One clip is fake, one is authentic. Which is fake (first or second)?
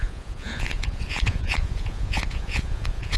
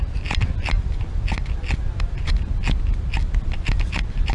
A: first